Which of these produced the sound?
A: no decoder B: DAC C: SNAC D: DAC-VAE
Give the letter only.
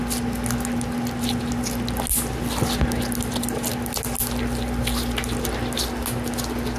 A